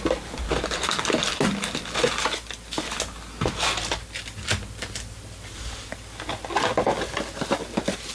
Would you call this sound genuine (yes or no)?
yes